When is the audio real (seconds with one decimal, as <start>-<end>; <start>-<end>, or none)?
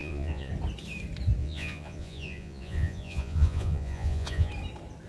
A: 0.5-1.4; 4.5-5.1